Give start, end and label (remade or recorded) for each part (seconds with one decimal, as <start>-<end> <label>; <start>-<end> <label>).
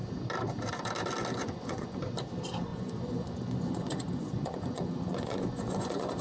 0.0-1.4 recorded; 1.4-2.0 remade; 2.0-2.7 recorded; 2.7-6.2 remade